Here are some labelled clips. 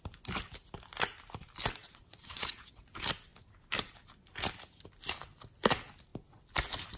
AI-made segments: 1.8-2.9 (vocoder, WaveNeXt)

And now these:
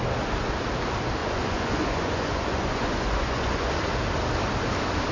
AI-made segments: 1.2-3.7 (vocoder, Vocos)

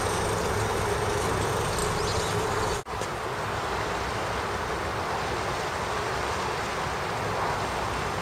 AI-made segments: none

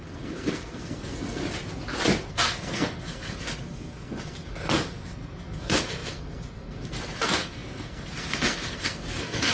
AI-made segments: 0.0-1.4 (codec, SNAC); 2.3-9.5

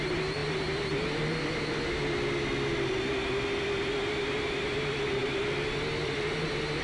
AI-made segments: none

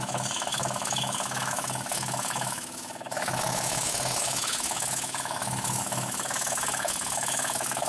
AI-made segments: 0.0-7.9 (autoencoder, DAC-VAE)